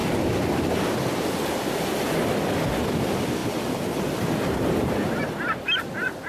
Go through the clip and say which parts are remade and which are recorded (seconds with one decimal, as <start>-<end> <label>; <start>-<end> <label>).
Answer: 0.0-3.4 recorded; 3.4-4.9 remade; 4.9-6.3 recorded